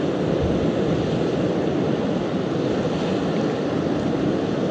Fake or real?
real